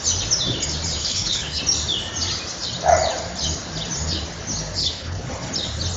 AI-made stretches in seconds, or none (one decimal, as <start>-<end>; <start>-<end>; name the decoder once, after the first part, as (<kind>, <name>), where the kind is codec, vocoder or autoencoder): 1.0-1.6 (codec, HILCodec); 4.8-5.3